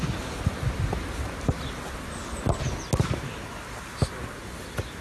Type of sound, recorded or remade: recorded